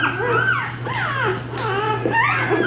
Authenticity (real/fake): real